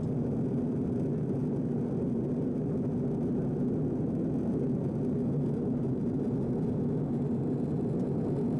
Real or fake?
real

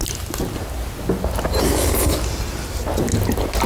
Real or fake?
real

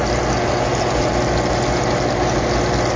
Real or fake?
real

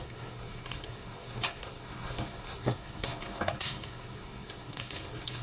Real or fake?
fake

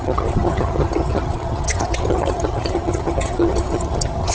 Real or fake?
fake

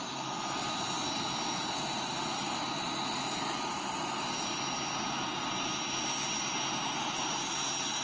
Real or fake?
real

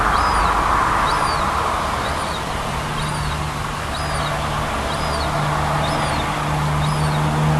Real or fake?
real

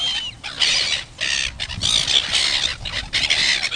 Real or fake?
real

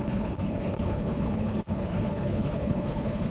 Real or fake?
fake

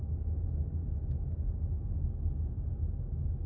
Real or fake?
real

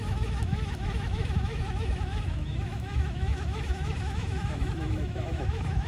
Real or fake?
fake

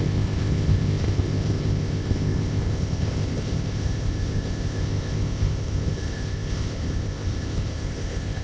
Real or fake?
fake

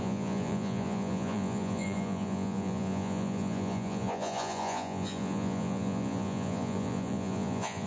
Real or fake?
fake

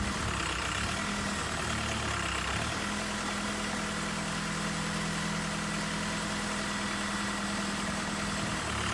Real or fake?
real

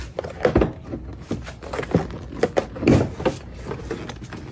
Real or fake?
real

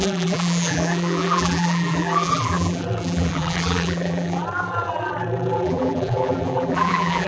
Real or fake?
fake